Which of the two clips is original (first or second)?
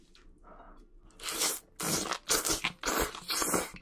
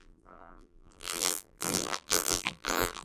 first